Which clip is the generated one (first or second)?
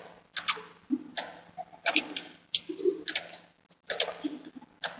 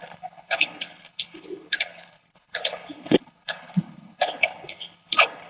second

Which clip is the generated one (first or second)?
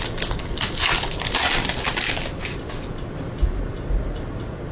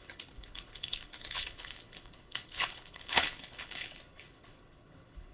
second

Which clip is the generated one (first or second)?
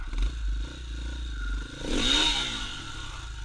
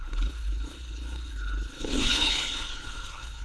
second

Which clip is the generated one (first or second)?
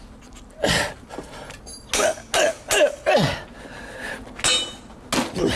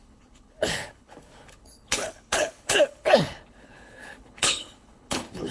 second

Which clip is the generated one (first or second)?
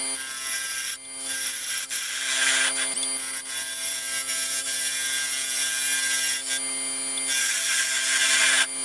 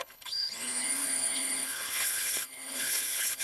second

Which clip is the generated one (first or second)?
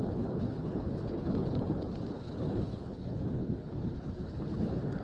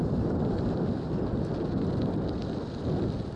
first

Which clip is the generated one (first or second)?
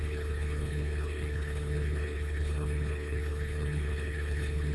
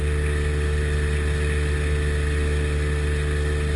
first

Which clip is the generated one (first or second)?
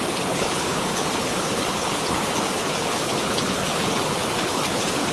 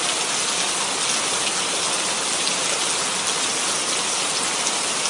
first